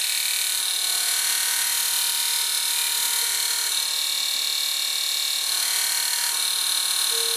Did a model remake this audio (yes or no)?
no